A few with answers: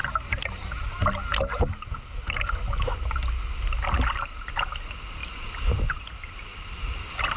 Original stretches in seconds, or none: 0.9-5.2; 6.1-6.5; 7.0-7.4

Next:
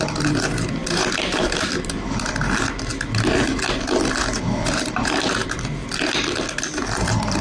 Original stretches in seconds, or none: none

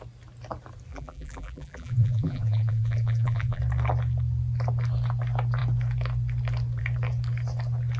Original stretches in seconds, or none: 0.0-0.9; 3.6-8.0

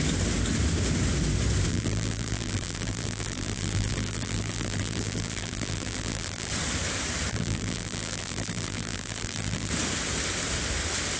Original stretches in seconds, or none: 0.0-1.7; 6.5-7.3; 9.7-11.2

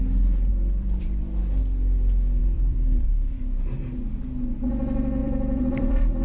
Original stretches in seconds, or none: 0.0-0.5; 1.4-2.4; 3.4-5.2

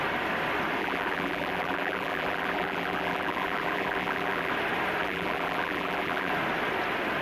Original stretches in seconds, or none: 0.0-0.8; 4.5-5.0; 6.3-7.2

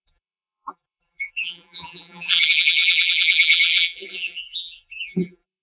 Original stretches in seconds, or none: none

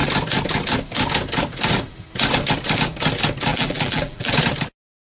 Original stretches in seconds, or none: 0.0-3.5; 4.3-5.1